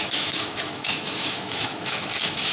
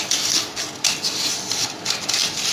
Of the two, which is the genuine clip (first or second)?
second